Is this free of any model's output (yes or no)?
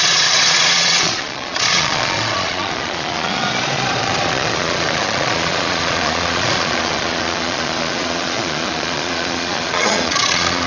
no